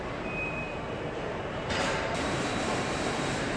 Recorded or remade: remade